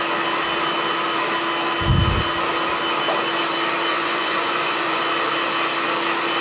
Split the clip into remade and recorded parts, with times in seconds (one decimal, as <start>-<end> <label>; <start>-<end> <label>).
0.0-3.9 recorded; 3.9-5.0 remade; 5.0-6.4 recorded